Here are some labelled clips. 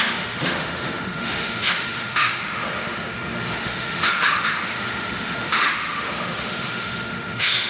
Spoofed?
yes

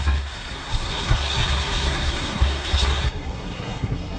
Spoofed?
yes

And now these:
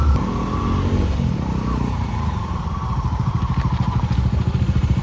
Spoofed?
yes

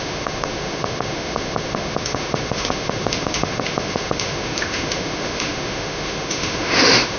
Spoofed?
yes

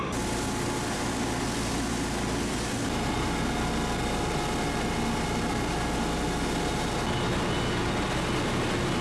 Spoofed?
no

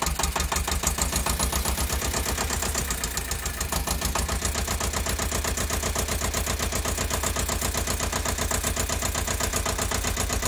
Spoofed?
no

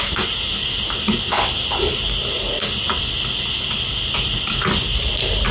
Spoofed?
no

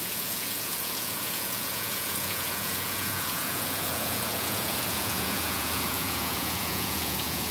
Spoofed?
yes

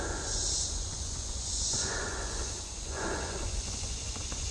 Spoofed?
yes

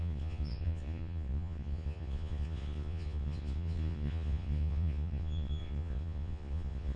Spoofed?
yes